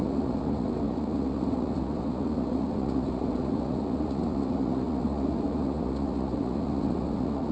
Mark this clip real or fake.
fake